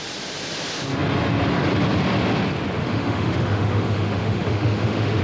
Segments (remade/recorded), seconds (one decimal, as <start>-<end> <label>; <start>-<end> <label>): 0.0-2.8 recorded; 2.8-5.2 remade